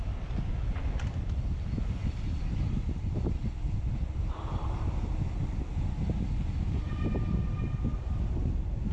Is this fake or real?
real